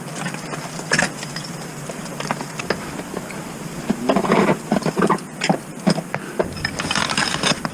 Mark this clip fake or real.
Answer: real